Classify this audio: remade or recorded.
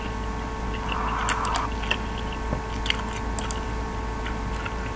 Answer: recorded